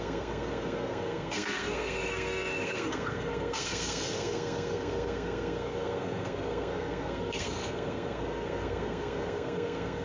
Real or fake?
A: fake